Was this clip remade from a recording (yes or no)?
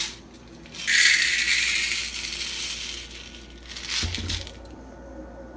no